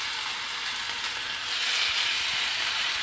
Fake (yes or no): no